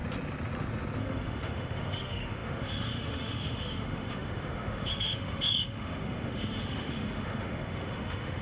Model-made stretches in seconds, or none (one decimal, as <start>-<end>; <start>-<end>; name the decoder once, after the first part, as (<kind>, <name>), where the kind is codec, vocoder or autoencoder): 1.0-8.4 (autoencoder, DAC-VAE)